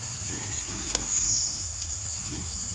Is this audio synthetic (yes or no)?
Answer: yes